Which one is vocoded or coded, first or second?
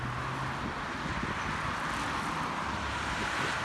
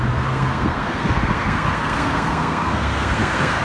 second